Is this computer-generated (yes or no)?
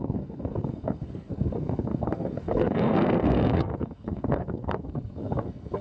yes